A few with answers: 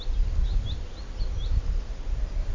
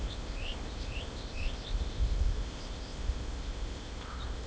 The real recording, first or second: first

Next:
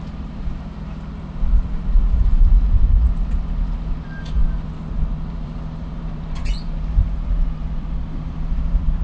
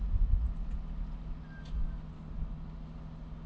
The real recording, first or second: second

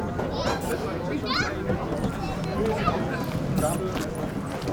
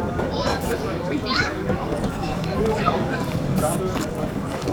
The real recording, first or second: first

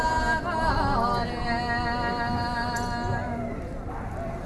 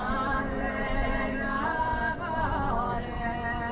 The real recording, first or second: first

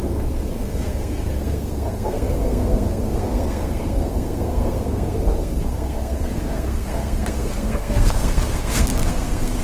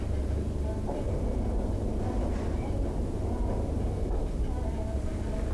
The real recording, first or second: second